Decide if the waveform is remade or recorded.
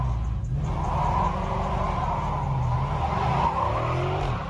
recorded